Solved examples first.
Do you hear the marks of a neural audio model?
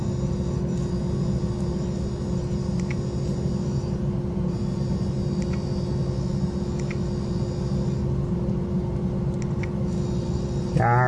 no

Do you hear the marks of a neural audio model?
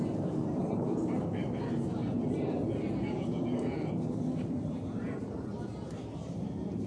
yes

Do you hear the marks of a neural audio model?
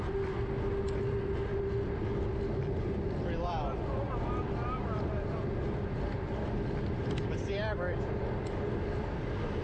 no